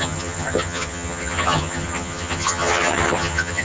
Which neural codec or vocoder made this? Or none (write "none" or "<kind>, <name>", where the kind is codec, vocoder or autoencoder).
vocoder, HiFi-GAN